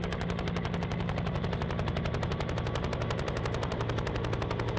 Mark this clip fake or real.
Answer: real